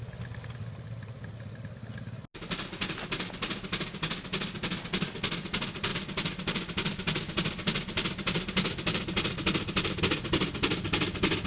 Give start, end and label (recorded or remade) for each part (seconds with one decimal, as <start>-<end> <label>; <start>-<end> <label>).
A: 0.0-5.9 recorded; 5.9-10.0 remade; 10.0-11.5 recorded